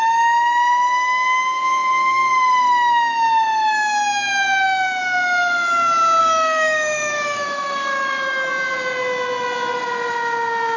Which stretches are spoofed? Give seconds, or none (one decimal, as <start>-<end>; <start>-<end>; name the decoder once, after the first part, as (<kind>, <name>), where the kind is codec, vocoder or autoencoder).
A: 6.2-8.5 (autoencoder, DAC-VAE)

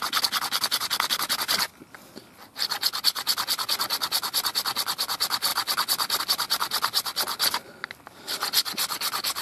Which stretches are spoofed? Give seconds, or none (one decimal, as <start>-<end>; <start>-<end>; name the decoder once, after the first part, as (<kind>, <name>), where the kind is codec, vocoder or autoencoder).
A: none

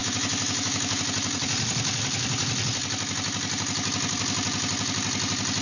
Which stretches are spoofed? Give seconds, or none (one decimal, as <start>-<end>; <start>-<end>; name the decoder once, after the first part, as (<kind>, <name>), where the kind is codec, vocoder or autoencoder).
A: 0.0-1.0 (autoencoder, DAC-VAE)